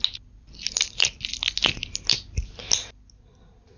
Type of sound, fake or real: real